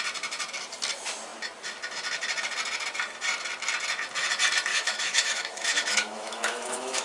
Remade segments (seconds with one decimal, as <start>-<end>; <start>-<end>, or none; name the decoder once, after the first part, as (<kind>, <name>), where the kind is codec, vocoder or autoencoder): 4.7-7.0 (autoencoder, DAC-VAE)